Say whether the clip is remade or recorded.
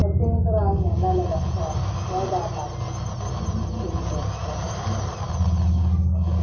recorded